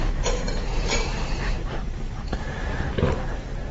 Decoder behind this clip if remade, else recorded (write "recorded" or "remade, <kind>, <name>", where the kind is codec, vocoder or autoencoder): remade, vocoder, BigVGAN v2